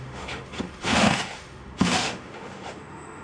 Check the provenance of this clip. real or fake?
fake